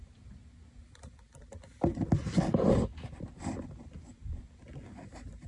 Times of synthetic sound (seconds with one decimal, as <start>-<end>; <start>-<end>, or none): 1.3-4.6